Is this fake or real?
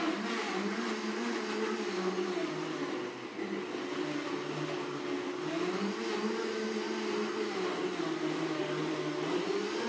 real